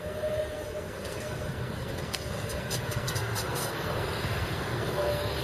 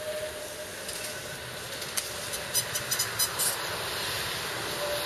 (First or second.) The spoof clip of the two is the first